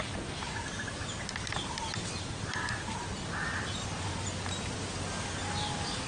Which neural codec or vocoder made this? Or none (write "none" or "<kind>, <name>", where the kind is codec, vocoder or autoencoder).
none